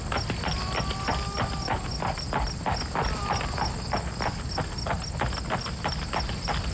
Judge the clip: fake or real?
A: real